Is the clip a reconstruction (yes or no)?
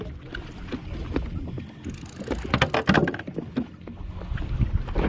no